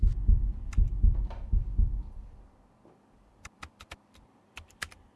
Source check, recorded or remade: recorded